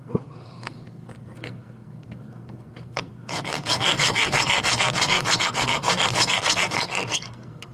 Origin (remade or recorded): remade